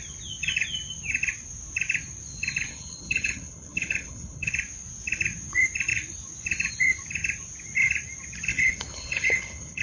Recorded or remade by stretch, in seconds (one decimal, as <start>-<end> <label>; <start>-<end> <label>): 0.0-2.7 recorded; 2.7-4.5 remade; 4.5-8.5 recorded; 8.5-9.8 remade